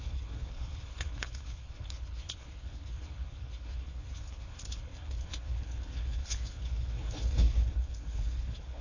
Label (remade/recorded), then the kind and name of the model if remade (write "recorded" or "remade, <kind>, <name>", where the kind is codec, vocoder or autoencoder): remade, codec, HILCodec